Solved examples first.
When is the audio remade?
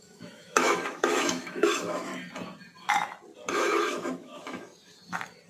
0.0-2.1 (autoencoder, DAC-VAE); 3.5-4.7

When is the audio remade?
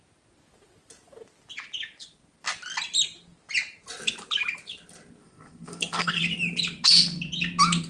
5.2-6.2 (codec, SNAC)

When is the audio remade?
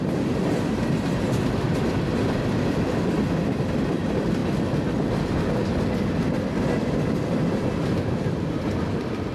0.0-4.4 (vocoder, BigVGAN v2); 6.9-9.3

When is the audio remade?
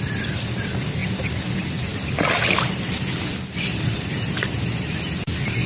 none